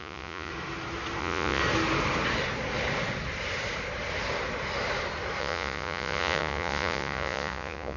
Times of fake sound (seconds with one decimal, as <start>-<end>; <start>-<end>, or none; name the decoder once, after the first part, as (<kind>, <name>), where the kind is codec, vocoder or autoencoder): 0.0-0.5 (vocoder, Vocos); 1.2-1.6; 5.4-8.0